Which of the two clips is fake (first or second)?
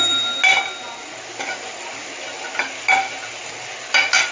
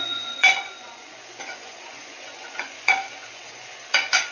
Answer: second